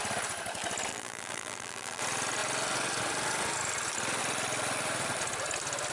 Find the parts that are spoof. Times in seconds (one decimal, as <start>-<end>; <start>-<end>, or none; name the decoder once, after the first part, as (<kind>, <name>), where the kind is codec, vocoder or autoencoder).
0.9-2.0 (vocoder, BigVGAN v2)